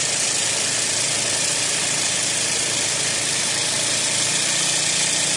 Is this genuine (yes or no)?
yes